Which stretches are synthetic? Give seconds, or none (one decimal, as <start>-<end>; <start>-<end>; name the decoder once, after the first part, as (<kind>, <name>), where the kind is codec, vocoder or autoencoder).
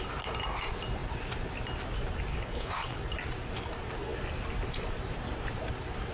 2.3-3.0 (codec, HILCodec)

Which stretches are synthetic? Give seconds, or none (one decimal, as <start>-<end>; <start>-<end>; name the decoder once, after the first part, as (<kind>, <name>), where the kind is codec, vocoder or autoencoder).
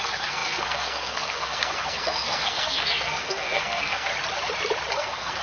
0.0-4.1 (codec, SNAC); 4.9-5.4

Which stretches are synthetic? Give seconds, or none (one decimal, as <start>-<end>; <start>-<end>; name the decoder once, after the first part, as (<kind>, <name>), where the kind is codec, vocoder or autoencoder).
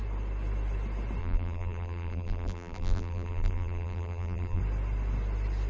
1.2-4.6 (vocoder, BigVGAN v2)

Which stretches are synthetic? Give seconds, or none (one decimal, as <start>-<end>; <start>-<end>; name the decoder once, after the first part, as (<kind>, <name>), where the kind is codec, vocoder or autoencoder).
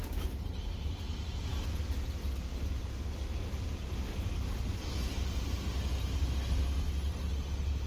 none